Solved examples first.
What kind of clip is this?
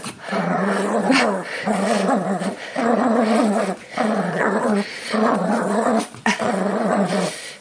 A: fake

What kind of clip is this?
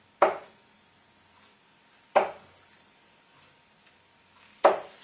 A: real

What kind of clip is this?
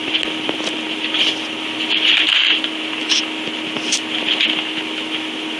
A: real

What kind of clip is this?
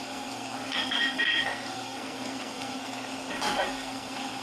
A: fake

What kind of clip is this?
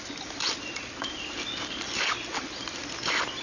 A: real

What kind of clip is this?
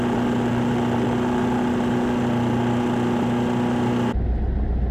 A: real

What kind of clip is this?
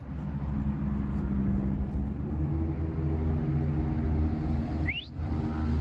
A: real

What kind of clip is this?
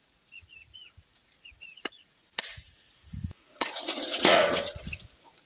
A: fake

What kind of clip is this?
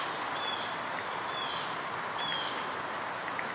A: real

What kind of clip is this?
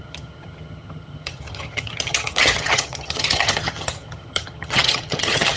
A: fake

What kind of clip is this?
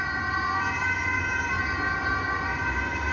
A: real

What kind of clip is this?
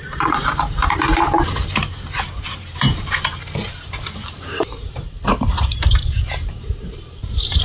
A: fake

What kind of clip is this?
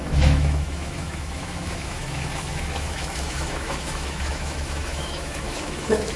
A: fake